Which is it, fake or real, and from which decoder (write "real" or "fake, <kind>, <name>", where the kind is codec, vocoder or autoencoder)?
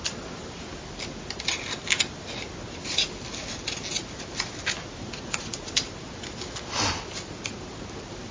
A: real